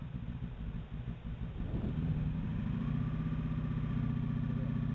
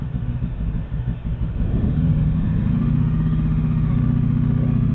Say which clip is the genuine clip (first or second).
first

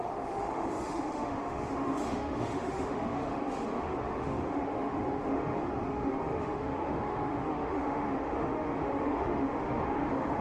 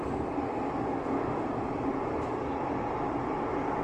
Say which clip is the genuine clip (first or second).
second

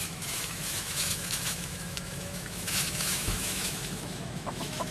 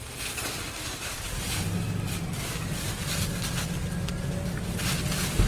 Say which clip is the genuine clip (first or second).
second